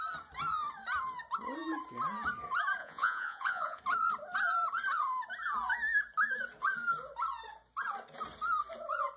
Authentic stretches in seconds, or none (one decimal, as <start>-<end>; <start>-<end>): 0.0-2.8; 3.8-9.2